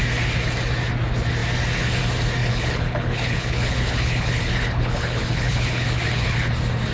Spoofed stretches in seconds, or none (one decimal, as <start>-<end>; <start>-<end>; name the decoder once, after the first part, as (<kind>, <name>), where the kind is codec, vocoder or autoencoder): 2.4-6.5 (codec, HILCodec)